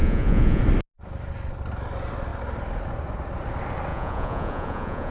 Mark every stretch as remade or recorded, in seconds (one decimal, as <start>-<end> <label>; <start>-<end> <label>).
0.0-0.6 remade; 0.6-3.9 recorded; 3.9-5.1 remade